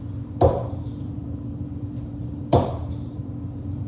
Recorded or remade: remade